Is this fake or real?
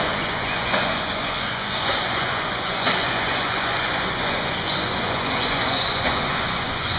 fake